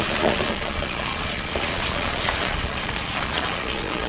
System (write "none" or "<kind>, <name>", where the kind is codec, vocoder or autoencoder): vocoder, Vocos